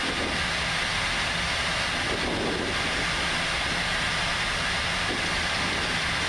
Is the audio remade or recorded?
recorded